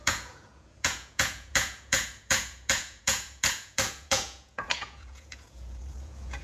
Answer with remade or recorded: remade